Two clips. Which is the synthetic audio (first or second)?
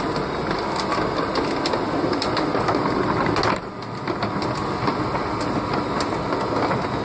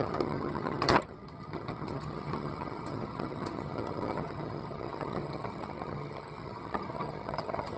second